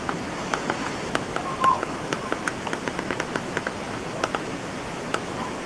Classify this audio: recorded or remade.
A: remade